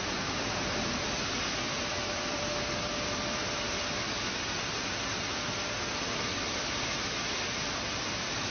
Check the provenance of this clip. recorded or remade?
remade